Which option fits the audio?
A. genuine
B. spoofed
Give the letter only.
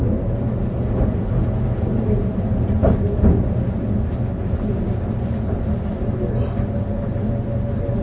A